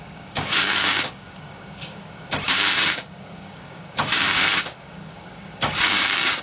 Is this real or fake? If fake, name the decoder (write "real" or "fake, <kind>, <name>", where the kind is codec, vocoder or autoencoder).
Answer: fake, codec, DAC